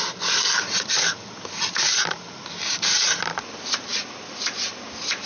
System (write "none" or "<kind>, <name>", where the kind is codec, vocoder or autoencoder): none